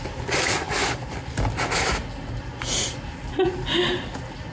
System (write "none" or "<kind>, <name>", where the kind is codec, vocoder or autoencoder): none